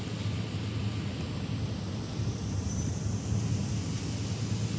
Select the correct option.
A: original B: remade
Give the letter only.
A